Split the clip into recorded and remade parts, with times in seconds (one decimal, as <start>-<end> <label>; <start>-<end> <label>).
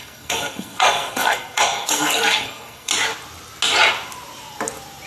0.0-2.9 remade; 2.9-5.1 recorded